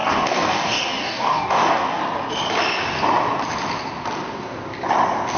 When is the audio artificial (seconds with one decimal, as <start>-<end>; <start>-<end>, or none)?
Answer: 0.0-2.0